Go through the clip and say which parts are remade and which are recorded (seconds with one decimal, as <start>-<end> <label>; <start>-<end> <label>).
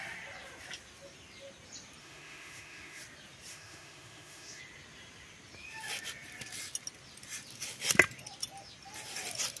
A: 0.0-2.0 recorded; 2.0-3.0 remade; 3.0-3.5 recorded; 3.5-4.6 remade; 4.6-9.6 recorded